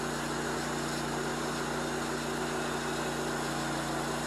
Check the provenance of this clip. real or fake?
real